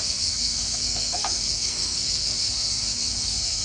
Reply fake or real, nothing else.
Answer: fake